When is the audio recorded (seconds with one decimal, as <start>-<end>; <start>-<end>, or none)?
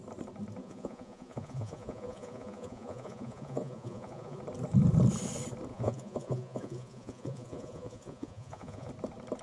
0.0-0.6; 4.4-5.7; 8.9-9.4